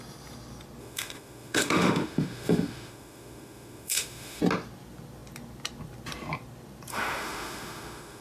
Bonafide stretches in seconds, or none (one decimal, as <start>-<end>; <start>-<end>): 0.0-0.8; 4.4-6.9